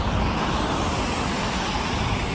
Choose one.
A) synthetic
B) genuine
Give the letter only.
B